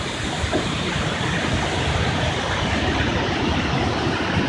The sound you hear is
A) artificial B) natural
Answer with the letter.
B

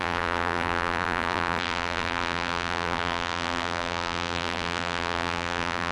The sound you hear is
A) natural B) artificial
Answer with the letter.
B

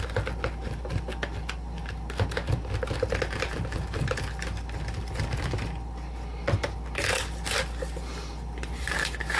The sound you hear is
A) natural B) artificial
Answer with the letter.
A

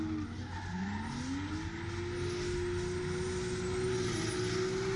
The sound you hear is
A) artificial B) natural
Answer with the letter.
B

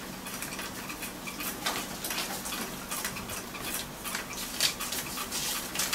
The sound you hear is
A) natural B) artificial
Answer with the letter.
A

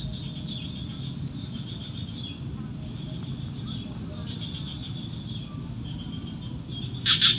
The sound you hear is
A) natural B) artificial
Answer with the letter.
A